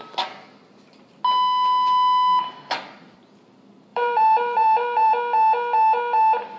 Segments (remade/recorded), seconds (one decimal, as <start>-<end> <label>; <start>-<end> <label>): 0.0-3.9 recorded; 3.9-5.1 remade; 5.1-6.6 recorded